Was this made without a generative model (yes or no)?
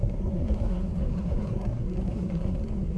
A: no